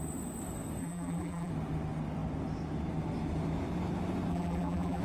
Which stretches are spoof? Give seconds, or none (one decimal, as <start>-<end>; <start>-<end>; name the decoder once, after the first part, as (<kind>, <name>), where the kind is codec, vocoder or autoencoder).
0.8-1.5 (vocoder, BigVGAN v2); 4.3-5.0